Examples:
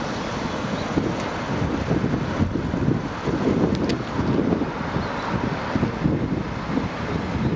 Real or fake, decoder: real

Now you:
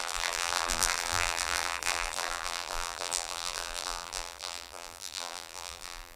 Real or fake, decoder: fake, vocoder, BigVGAN v2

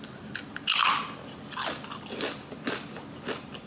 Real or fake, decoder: real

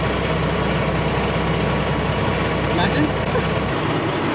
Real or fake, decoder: real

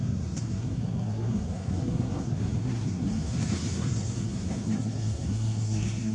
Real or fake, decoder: fake, codec, SNAC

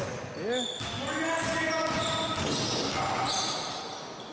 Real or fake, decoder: real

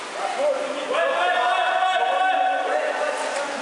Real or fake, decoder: real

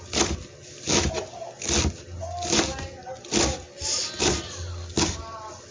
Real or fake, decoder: real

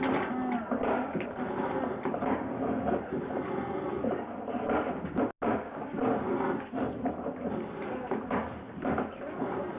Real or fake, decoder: real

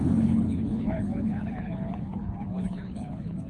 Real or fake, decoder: fake, codec, HILCodec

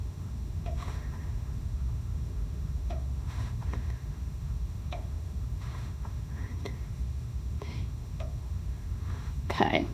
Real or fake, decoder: fake, autoencoder, DAC-VAE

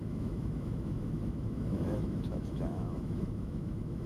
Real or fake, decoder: fake, autoencoder, DAC-VAE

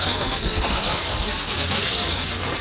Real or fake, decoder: fake, codec, SNAC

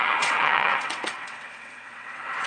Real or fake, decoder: fake, vocoder, WaveNeXt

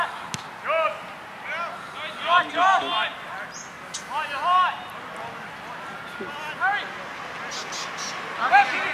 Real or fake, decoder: real